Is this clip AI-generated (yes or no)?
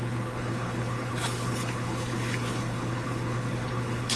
yes